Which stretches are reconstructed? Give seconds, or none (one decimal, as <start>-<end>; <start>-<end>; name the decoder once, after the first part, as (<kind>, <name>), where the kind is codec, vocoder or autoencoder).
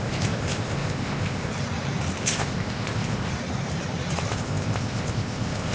0.0-1.5 (codec, ZipCodec); 2.2-3.3; 4.3-5.7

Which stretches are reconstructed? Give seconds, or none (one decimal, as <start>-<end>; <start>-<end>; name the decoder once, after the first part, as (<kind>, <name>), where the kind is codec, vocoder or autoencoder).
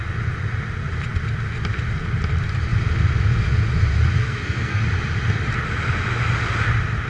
4.2-4.8 (codec, SNAC)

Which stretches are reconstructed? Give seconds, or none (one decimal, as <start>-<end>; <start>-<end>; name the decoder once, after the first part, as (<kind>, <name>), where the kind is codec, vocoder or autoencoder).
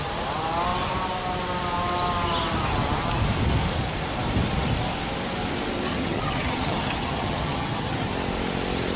5.9-8.1 (vocoder, HiFi-GAN)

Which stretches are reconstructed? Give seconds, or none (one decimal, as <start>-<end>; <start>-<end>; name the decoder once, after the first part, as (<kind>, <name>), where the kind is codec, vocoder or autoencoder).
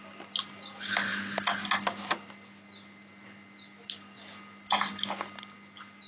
none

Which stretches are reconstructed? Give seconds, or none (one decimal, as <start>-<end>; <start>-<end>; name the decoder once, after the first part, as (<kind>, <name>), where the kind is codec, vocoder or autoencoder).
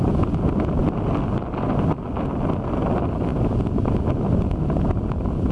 none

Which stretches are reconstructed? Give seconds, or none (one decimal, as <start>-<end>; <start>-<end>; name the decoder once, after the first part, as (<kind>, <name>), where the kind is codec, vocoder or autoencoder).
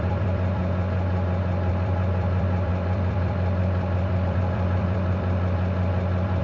0.0-0.6 (vocoder, BigVGAN v2); 1.7-6.4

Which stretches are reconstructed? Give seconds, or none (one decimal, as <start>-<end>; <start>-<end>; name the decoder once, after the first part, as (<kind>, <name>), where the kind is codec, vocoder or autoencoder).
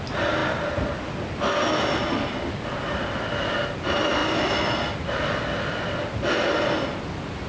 none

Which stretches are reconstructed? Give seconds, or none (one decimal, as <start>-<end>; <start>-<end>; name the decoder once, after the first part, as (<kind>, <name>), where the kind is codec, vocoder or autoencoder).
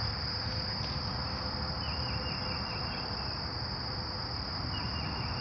none